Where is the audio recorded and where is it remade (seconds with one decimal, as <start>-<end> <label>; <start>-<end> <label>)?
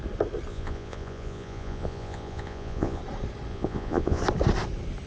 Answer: 0.0-0.5 recorded; 0.5-3.0 remade; 3.0-3.5 recorded; 3.5-4.2 remade; 4.2-5.1 recorded